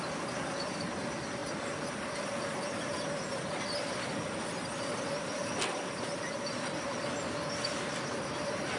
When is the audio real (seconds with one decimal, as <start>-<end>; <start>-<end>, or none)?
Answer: 0.0-8.8